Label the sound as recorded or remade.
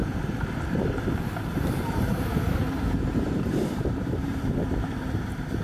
remade